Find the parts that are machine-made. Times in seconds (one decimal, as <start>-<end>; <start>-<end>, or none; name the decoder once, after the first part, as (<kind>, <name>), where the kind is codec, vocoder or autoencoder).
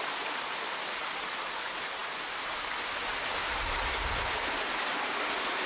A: none